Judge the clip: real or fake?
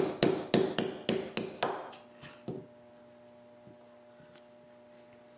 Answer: real